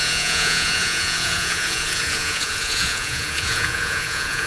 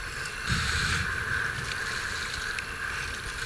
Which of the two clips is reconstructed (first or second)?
first